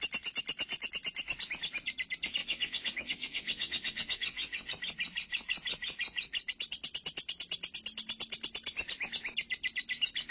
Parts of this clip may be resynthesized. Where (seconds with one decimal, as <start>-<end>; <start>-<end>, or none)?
2.4-4.7